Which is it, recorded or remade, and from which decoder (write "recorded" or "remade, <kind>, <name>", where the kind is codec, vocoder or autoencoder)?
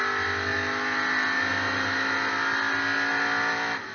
recorded